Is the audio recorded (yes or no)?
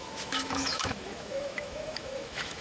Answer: no